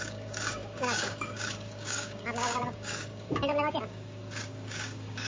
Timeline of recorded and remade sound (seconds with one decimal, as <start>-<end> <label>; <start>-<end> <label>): 0.0-5.3 remade